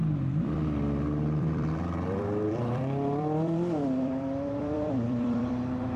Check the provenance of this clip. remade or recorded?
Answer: remade